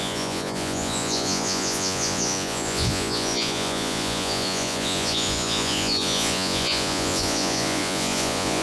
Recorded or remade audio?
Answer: remade